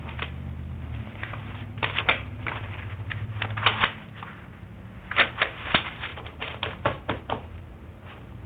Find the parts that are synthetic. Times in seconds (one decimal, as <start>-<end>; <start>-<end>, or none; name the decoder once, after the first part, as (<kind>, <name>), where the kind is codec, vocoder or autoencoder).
1.4-3.3 (vocoder, BigVGAN v2); 6.1-7.6